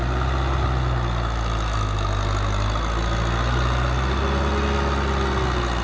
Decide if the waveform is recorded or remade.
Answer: recorded